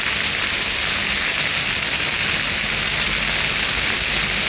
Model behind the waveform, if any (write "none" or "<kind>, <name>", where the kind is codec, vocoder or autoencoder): none